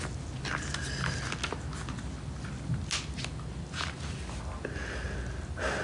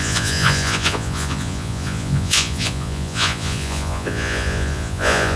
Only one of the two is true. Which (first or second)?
first